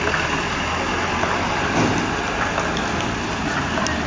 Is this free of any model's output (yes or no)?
yes